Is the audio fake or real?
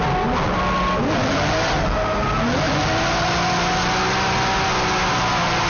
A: real